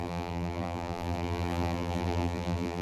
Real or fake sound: fake